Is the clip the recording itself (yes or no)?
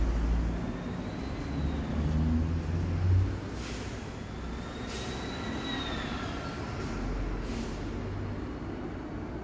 yes